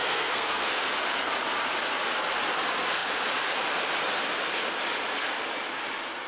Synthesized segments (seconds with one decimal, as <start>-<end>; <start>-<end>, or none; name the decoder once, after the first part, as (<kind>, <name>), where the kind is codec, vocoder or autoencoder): 0.0-1.0 (codec, SNAC)